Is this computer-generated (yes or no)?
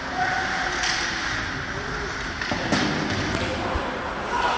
no